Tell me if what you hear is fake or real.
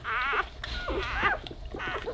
real